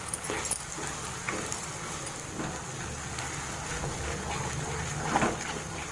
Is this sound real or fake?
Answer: real